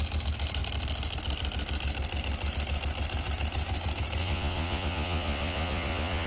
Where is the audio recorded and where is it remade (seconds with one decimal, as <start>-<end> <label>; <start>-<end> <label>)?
0.0-4.2 recorded; 4.2-6.3 remade